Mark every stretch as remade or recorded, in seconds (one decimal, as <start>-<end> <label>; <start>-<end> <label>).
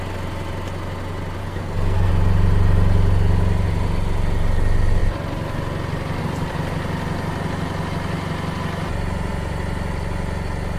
0.0-1.4 recorded; 1.4-2.1 remade; 2.1-10.8 recorded